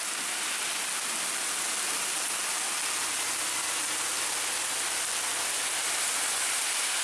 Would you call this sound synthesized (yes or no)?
no